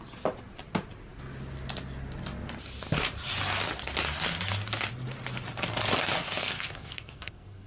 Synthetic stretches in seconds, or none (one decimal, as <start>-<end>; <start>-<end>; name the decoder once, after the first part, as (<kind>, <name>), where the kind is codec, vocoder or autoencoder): 6.4-7.7 (codec, SNAC)